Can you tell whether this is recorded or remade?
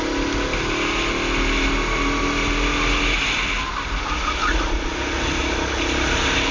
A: recorded